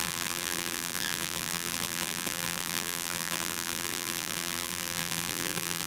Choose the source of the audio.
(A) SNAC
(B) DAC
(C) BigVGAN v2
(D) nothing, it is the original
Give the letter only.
C